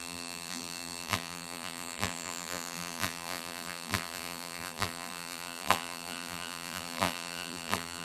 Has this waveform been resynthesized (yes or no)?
yes